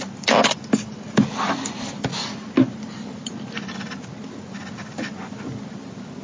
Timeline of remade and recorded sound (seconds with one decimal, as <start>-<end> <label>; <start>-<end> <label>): 0.0-6.2 recorded